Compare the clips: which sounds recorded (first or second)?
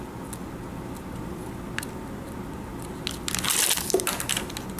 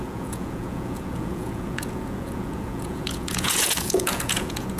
first